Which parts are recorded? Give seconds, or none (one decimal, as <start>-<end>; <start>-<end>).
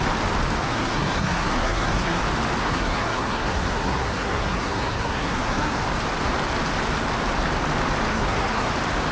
0.0-0.7; 2.2-2.6; 5.8-8.1; 8.7-9.1